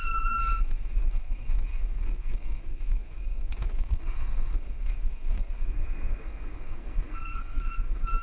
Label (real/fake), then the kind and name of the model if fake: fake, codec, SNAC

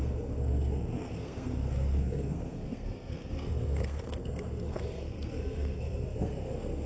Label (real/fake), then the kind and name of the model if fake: fake, codec, SNAC